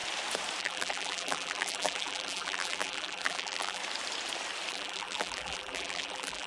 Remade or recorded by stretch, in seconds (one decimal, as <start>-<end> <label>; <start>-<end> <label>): 0.0-0.6 recorded; 0.6-3.8 remade; 3.8-4.7 recorded; 4.7-6.5 remade